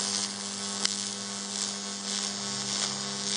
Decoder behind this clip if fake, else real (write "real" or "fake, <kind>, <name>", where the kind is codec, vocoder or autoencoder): real